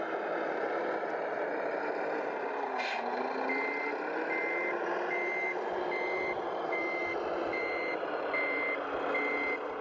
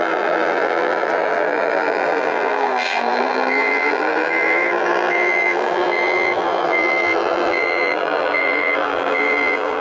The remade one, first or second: second